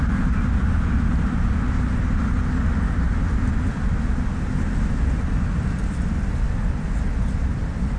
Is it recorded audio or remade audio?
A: recorded